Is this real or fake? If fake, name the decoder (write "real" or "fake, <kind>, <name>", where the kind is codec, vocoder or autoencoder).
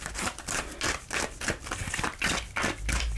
real